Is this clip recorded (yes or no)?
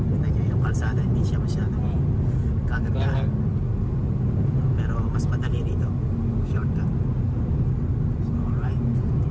yes